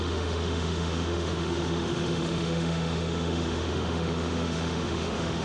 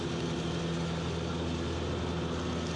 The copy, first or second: first